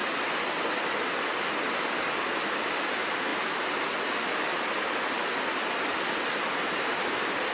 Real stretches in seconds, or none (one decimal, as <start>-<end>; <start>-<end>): 0.0-7.5